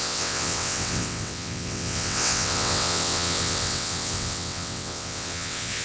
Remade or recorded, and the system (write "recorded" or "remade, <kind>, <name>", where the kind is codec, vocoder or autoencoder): remade, vocoder, WaveNeXt